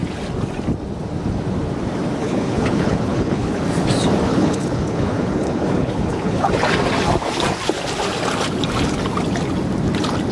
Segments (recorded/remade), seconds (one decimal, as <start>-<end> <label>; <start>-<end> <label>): 0.0-2.2 recorded; 2.2-3.6 remade; 3.6-4.3 recorded; 4.3-6.5 remade; 6.5-10.3 recorded